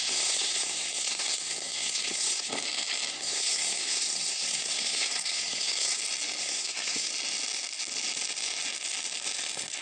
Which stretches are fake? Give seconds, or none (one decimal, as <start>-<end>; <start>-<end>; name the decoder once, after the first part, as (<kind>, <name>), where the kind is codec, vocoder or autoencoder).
0.0-2.5 (codec, SNAC); 3.1-6.0; 6.4-7.1